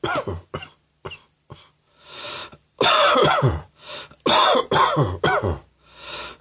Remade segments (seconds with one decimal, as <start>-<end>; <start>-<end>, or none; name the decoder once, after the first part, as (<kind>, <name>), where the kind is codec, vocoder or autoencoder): 2.4-3.9 (vocoder, BigVGAN v2)